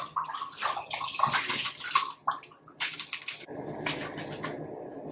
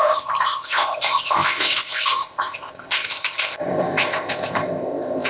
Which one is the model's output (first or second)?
second